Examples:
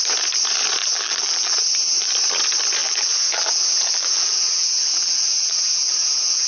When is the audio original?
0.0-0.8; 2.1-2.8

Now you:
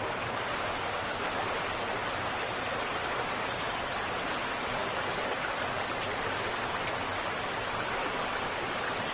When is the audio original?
0.0-9.1

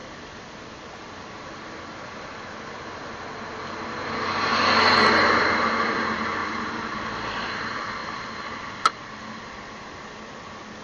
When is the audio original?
2.7-6.4; 7.3-8.0; 9.4-10.8

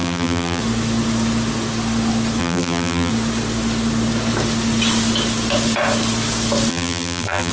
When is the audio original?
0.6-2.4; 3.1-6.7

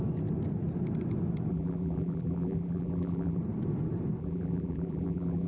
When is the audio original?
0.0-1.5; 3.4-4.2

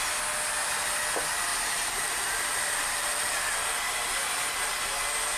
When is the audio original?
0.0-1.5; 3.8-5.4

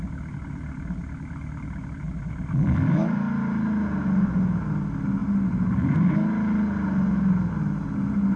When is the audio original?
0.0-8.4

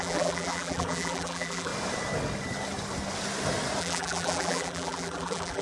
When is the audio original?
1.7-3.8